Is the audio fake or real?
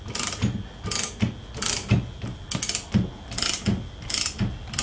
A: real